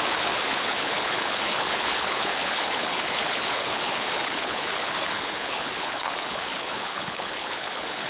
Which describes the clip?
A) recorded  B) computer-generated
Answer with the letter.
B